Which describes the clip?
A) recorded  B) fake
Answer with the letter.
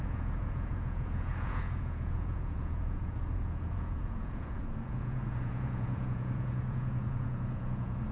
B